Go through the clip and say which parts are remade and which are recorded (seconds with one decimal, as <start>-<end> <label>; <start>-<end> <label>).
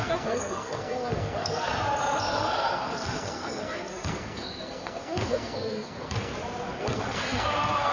0.0-1.7 remade; 1.7-2.2 recorded; 2.2-6.3 remade; 6.3-6.8 recorded; 6.8-7.9 remade